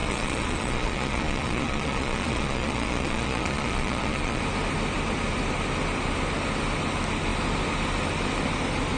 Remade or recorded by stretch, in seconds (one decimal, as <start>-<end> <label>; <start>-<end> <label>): 0.0-4.4 remade; 4.4-9.0 recorded